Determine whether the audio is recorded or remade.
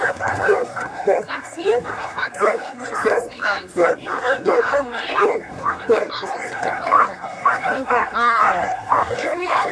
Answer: remade